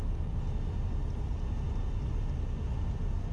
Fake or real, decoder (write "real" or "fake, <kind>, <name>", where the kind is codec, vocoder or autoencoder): real